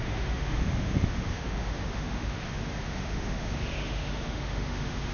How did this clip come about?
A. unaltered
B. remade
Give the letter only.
B